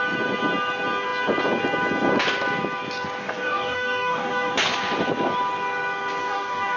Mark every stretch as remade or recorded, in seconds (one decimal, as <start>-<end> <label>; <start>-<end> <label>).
0.0-3.2 recorded; 3.2-4.5 remade; 4.5-6.2 recorded; 6.2-6.8 remade